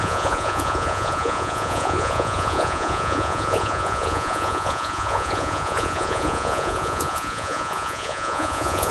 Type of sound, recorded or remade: remade